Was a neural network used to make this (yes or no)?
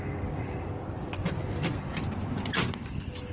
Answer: no